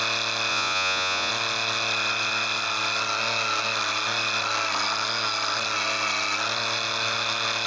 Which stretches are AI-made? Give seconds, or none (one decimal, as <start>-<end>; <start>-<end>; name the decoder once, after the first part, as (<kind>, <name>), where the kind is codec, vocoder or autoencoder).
0.5-1.3 (vocoder, Vocos)